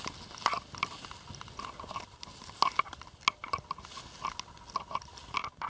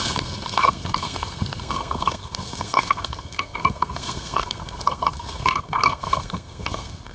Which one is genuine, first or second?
first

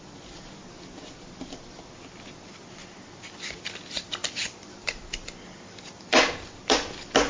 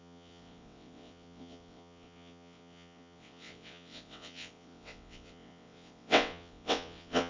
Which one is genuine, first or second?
first